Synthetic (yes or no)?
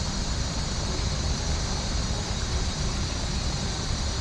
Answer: yes